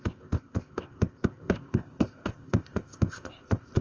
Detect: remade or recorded remade